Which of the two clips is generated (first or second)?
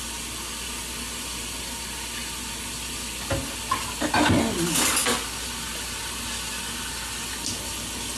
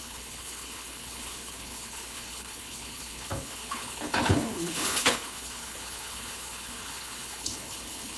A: second